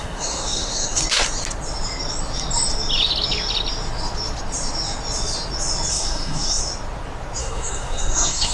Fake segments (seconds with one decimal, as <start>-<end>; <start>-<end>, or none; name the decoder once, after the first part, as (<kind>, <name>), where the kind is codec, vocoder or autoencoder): 0.0-1.0 (codec, SNAC); 5.9-6.6; 7.4-8.5